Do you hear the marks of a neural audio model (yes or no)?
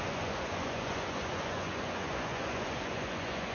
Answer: yes